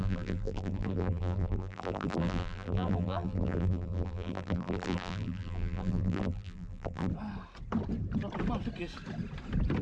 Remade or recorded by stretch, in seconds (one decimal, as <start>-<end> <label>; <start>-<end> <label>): 0.0-7.1 remade; 7.1-9.8 recorded